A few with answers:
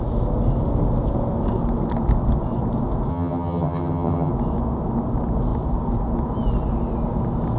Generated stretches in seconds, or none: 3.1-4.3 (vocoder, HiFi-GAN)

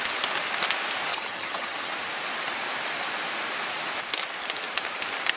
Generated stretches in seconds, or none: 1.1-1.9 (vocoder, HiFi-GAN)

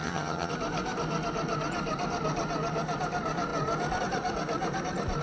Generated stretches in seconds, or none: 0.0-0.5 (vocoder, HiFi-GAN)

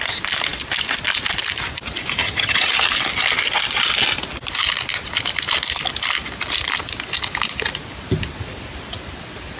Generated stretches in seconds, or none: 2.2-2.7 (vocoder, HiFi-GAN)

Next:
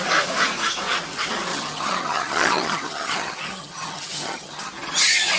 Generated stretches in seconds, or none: 1.5-4.7 (vocoder, HiFi-GAN)

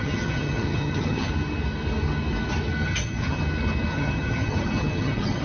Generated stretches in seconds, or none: 0.0-1.3 (vocoder, HiFi-GAN); 2.8-3.4; 3.9-5.4